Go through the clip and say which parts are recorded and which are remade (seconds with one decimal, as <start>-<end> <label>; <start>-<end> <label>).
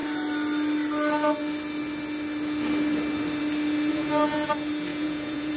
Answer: 0.0-3.9 recorded; 3.9-4.5 remade; 4.5-4.9 recorded; 4.9-5.6 remade